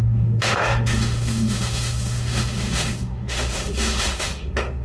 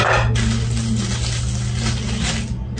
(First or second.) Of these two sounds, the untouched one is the second